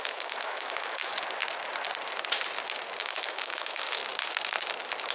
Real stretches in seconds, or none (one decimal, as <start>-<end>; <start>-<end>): 1.1-3.0; 4.0-5.1

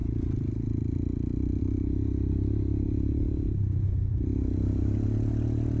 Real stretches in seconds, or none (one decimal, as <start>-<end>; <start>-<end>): 0.0-5.8

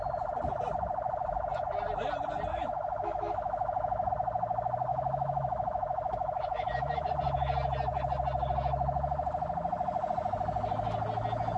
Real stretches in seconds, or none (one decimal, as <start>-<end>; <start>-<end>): 0.0-2.5; 4.1-4.9; 7.1-11.6

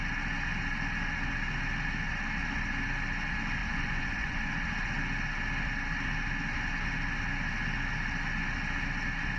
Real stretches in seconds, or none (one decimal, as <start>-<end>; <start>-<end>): 0.0-3.6; 4.5-9.4

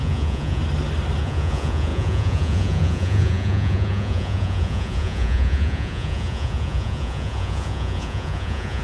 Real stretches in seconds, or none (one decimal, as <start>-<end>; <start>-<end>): 0.6-1.2

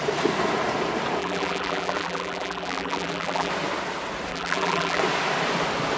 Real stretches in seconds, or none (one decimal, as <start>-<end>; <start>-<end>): 0.0-1.2; 3.5-4.3; 5.0-6.0

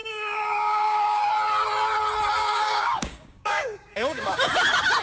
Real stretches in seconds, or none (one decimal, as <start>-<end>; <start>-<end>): 1.3-2.4; 4.5-5.0